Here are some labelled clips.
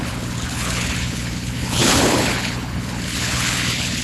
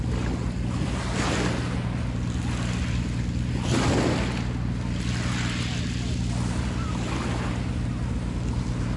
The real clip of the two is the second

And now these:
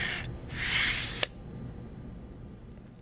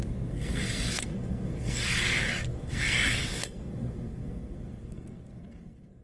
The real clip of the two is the first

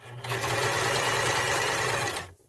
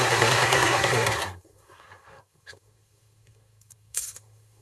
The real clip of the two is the first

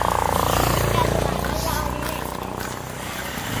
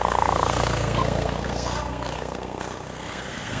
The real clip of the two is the first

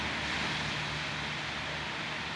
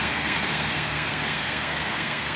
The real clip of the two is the first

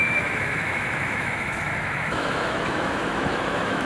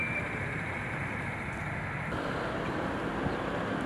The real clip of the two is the second